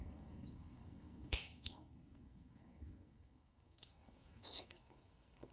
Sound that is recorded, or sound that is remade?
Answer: remade